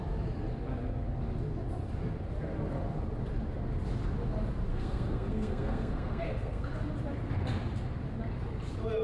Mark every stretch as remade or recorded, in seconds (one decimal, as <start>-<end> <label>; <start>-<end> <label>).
0.0-4.7 recorded; 4.7-6.7 remade; 6.7-9.0 recorded